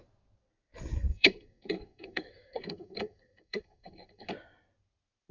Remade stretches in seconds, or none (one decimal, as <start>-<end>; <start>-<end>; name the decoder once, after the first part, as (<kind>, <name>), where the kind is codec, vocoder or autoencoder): 1.1-4.3 (codec, SNAC)